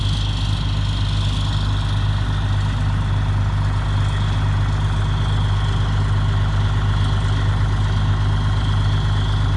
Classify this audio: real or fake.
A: real